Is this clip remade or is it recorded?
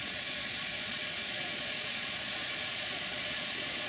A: remade